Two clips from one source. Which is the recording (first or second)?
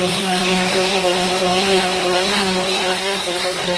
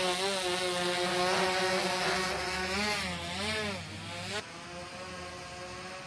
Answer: second